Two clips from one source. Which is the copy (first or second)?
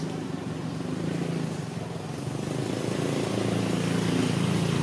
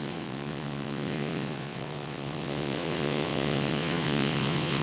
second